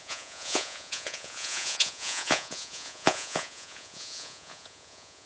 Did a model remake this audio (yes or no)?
yes